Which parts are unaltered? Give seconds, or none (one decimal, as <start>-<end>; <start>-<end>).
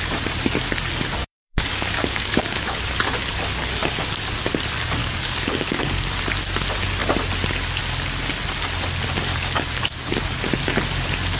0.0-1.2; 2.8-5.0; 6.2-9.3; 10.3-11.4